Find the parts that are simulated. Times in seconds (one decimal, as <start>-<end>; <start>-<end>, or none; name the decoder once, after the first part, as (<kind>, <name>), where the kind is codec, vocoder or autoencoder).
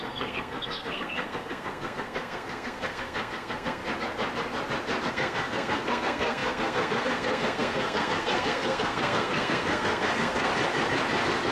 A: 0.0-3.8 (codec, SNAC); 5.1-10.5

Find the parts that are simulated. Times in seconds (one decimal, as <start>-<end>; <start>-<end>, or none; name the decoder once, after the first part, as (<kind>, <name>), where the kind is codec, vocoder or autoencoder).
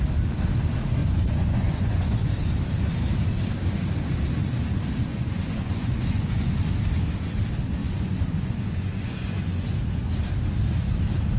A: 1.0-2.3 (vocoder, Vocos); 5.1-6.5; 7.8-9.8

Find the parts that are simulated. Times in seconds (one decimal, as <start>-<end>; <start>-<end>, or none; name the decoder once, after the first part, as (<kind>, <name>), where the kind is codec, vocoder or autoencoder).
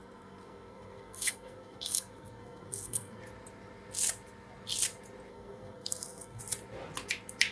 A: 0.0-3.2 (codec, SNAC); 5.3-6.4